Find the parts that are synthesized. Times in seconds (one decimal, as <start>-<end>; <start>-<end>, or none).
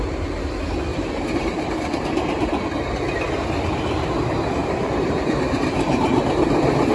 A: 0.9-2.6; 4.6-6.3